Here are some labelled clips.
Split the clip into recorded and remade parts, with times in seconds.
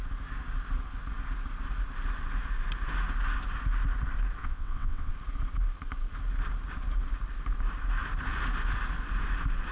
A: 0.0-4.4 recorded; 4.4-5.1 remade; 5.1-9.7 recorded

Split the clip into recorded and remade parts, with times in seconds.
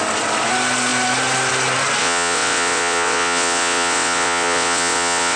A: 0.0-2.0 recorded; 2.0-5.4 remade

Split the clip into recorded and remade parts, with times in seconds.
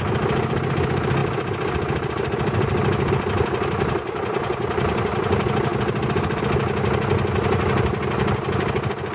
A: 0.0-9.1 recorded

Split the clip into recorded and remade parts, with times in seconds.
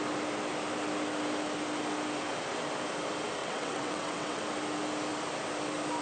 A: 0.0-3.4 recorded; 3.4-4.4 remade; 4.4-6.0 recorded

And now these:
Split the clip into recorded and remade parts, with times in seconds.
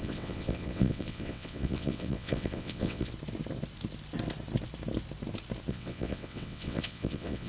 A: 0.0-3.1 remade; 3.1-5.7 recorded; 5.7-7.5 remade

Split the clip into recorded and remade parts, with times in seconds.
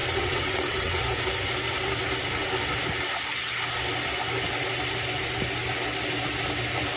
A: 0.0-1.0 remade; 1.0-7.0 recorded